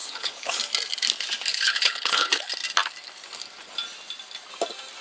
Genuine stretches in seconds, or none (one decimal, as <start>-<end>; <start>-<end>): 0.6-1.5; 2.5-5.0